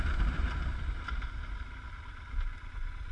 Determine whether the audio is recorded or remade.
recorded